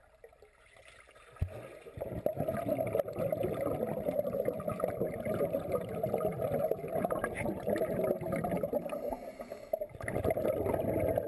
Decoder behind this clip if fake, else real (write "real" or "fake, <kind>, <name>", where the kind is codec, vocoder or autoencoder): real